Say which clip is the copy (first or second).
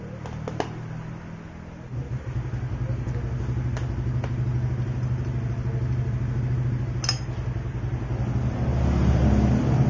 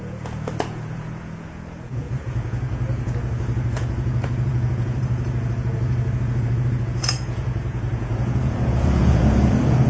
second